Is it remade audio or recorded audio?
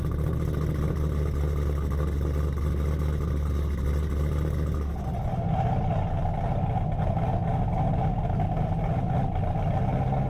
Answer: recorded